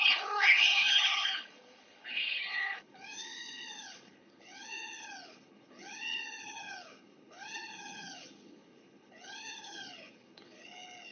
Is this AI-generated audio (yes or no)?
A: yes